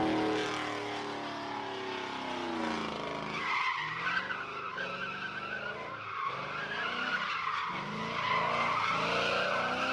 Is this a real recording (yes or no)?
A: yes